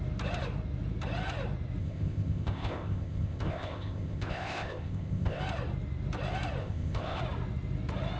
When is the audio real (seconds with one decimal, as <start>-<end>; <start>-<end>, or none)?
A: 0.0-1.8; 5.4-6.6; 7.2-8.2